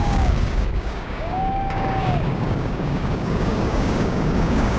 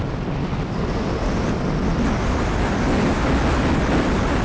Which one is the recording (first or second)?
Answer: second